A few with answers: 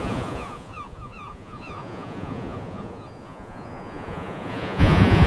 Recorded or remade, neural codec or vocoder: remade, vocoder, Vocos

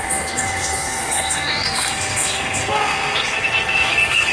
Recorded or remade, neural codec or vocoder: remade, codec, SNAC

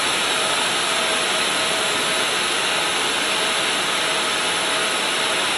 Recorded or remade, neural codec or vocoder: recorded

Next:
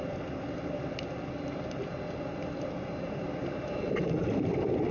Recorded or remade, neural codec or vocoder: recorded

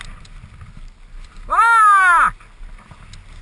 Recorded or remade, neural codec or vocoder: recorded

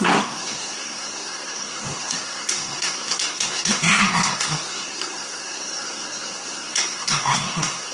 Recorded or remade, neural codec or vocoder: remade, codec, SNAC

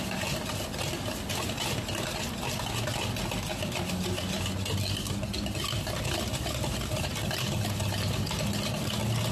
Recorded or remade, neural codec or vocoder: recorded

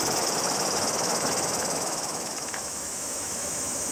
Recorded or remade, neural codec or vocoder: remade, autoencoder, DAC-VAE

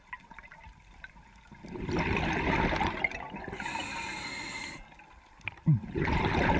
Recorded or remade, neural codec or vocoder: recorded